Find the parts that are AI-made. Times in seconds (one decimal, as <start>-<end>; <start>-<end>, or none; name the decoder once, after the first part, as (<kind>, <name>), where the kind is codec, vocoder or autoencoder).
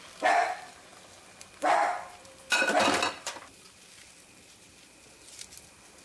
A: none